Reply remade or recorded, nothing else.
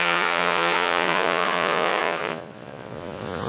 remade